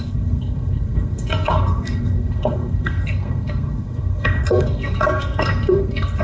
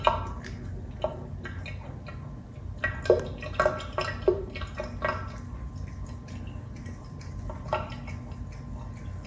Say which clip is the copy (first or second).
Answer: first